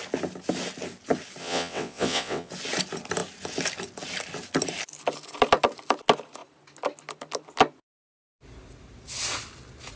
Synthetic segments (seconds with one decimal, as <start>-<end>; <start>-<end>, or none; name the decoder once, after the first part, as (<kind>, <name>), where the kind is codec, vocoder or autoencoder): 1.4-2.5 (vocoder, WaveNeXt)